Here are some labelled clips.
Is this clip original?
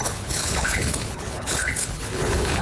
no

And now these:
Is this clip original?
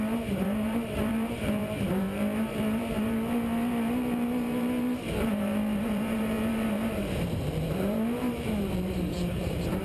no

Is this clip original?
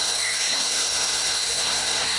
no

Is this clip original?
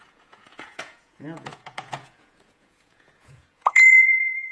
no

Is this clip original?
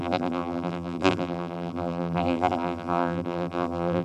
no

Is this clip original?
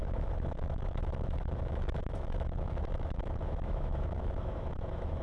no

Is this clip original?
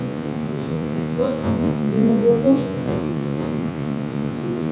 no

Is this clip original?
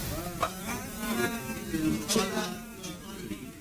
yes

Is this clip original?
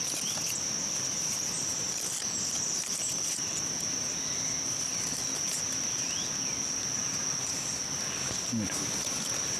yes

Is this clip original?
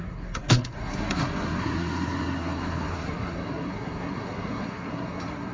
no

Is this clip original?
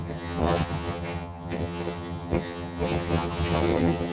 no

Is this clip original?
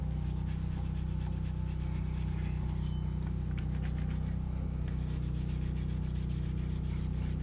yes